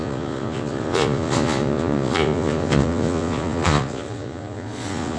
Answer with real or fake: fake